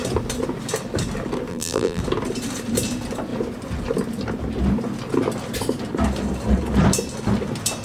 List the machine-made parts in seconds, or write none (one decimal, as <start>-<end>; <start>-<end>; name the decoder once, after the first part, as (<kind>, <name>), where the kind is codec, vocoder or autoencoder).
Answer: 1.5-2.0 (vocoder, BigVGAN v2)